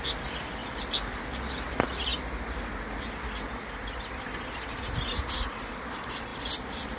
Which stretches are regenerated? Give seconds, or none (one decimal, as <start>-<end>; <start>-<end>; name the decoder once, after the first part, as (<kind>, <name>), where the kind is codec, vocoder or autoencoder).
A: none